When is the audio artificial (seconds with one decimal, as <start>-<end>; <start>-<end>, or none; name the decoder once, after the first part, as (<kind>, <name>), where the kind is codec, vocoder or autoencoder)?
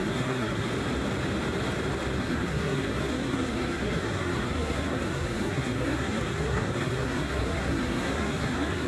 0.0-0.7 (codec, SNAC); 2.2-8.9